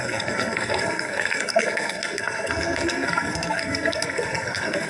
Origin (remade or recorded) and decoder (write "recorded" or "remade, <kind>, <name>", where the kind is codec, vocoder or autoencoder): remade, codec, SNAC